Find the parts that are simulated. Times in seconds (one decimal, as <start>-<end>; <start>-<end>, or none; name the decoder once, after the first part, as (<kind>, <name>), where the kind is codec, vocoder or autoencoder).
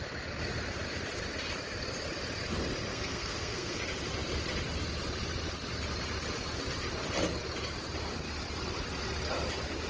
2.9-3.8 (codec, SNAC)